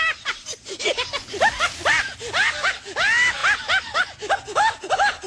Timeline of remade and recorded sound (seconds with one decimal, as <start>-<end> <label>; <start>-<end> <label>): 0.0-5.3 recorded